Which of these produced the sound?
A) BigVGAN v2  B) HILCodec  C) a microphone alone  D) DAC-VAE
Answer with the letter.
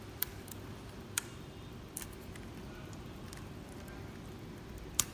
A